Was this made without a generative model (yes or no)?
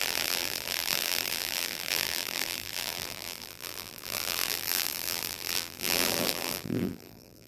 no